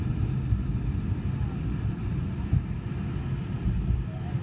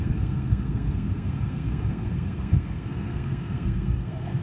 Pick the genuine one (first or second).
first